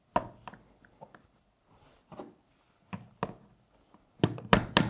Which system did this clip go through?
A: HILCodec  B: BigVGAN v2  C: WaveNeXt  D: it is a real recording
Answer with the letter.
D